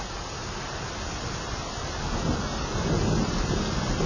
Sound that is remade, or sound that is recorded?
recorded